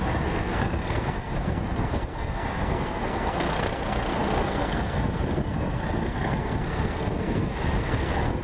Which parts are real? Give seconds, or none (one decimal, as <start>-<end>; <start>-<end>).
none